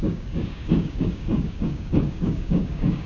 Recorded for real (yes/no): no